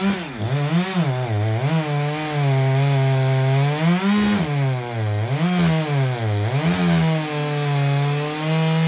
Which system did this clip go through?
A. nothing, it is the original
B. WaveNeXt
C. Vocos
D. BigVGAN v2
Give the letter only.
A